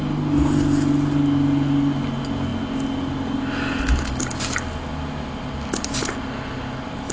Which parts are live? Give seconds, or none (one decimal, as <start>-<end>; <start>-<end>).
0.0-7.1